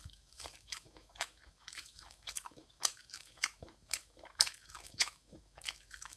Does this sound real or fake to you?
fake